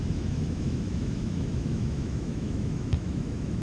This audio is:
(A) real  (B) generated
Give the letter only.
B